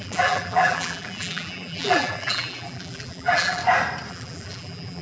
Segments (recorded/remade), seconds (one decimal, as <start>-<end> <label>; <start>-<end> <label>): 0.0-3.6 remade; 3.6-4.1 recorded; 4.1-5.0 remade

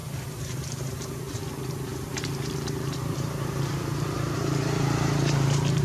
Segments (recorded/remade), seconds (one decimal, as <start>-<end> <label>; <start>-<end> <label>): 0.0-1.4 remade; 1.4-1.9 recorded; 1.9-5.8 remade

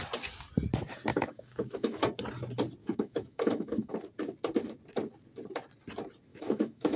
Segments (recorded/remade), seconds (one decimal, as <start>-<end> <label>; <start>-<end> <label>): 0.0-1.1 recorded; 1.1-2.0 remade; 2.0-2.8 recorded; 2.8-3.9 remade; 3.9-6.3 recorded; 6.3-7.0 remade

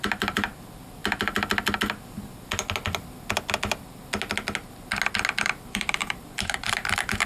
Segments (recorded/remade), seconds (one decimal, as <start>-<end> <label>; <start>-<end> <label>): 0.0-1.0 remade; 1.0-5.4 recorded; 5.4-7.3 remade

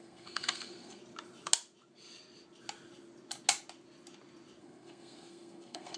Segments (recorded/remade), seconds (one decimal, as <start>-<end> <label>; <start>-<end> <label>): 0.0-1.0 remade; 1.0-4.6 recorded; 4.6-6.0 remade